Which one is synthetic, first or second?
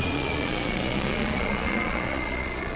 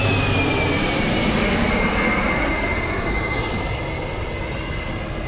first